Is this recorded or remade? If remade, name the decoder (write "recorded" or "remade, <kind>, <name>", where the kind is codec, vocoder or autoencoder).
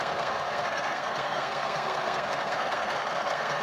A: remade, codec, SNAC